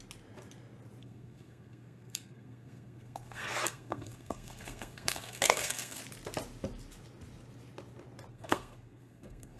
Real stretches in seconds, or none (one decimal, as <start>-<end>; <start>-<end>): 0.0-1.0; 6.0-8.3